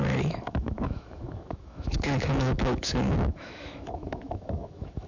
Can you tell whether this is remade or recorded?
remade